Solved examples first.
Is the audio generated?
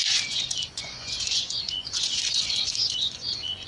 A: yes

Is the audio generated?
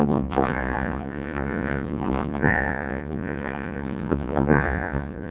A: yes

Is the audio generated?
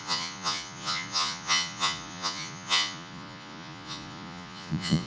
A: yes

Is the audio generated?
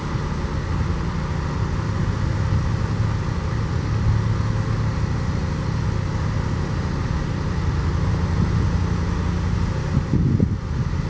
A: no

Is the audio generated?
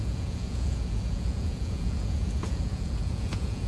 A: yes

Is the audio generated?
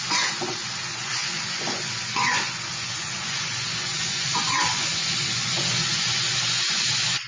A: yes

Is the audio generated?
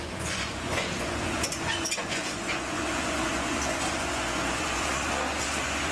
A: yes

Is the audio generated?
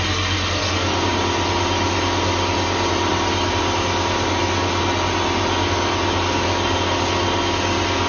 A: no